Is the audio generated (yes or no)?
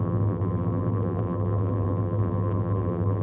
yes